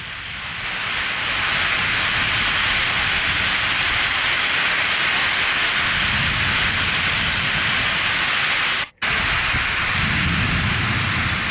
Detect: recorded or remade recorded